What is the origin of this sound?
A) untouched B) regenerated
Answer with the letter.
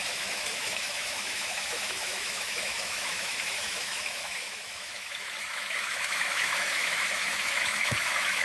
B